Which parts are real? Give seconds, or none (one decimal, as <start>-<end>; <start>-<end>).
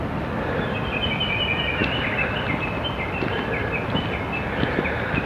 0.0-5.3